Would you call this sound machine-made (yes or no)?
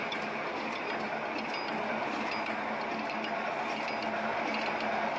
no